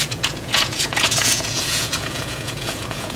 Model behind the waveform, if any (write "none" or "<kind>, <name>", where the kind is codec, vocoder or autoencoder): vocoder, Vocos